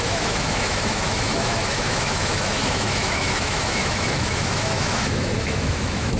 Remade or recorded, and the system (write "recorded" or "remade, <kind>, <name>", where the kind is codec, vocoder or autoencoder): remade, autoencoder, DAC-VAE